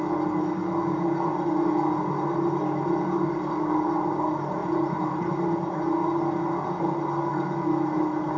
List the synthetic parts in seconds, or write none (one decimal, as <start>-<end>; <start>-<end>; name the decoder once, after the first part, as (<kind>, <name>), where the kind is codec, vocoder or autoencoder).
4.6-5.3 (vocoder, BigVGAN v2)